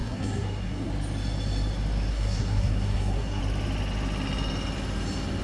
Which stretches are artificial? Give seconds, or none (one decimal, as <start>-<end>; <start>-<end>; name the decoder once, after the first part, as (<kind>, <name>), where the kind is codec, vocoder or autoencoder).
0.0-0.9 (codec, SNAC); 2.1-3.4